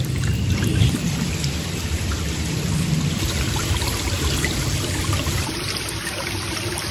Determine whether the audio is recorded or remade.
recorded